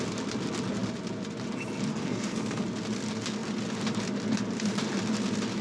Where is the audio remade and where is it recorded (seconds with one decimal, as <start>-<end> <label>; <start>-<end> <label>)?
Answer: 0.0-1.9 recorded; 1.9-2.6 remade; 2.6-5.6 recorded